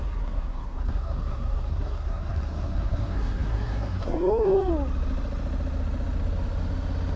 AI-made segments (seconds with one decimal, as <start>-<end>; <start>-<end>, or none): 0.0-4.7